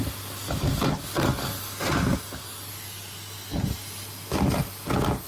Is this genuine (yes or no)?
yes